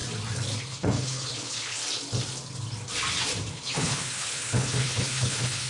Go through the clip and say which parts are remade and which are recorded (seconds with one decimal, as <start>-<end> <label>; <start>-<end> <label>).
0.0-0.6 recorded; 0.6-1.8 remade; 1.8-3.5 recorded; 3.5-5.7 remade